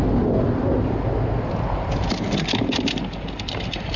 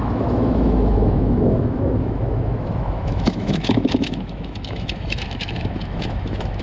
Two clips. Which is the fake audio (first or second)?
second